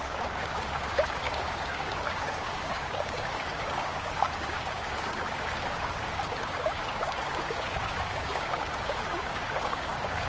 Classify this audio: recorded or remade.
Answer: remade